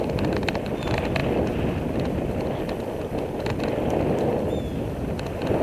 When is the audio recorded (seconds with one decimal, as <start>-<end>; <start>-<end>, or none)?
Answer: 0.0-5.6